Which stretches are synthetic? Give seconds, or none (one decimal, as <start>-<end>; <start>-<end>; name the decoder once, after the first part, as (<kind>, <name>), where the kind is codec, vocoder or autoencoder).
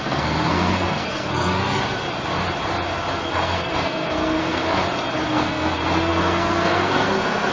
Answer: 0.0-1.8 (codec, SNAC); 3.3-4.8; 5.3-7.5